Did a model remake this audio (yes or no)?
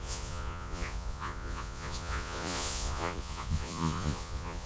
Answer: yes